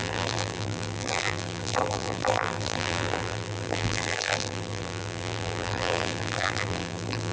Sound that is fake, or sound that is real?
fake